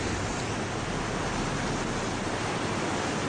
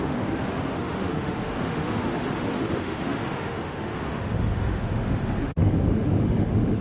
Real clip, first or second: first